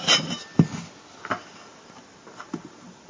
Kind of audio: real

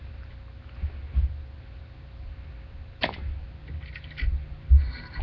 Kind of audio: real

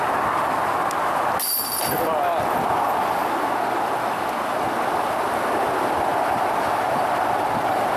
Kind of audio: real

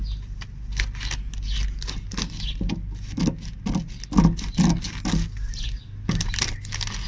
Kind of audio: real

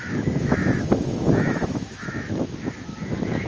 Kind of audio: fake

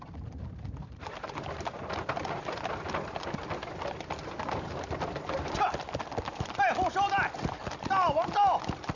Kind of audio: real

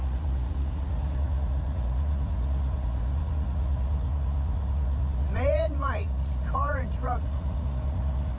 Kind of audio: fake